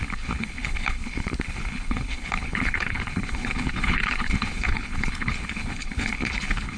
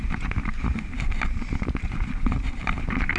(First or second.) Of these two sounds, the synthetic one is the first